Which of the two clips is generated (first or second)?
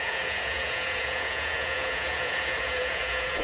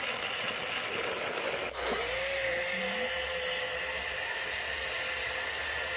first